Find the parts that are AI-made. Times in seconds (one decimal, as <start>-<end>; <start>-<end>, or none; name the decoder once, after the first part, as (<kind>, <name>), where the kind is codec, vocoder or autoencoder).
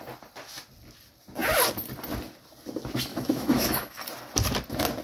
3.1-4.0 (autoencoder, DAC-VAE)